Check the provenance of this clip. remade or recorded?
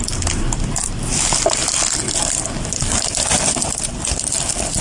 recorded